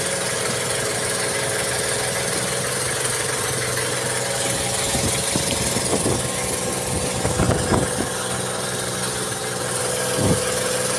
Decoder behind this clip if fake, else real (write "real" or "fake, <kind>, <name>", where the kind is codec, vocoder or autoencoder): real